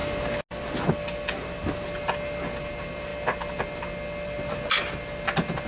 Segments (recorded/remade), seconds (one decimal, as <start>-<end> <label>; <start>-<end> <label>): 0.0-5.7 recorded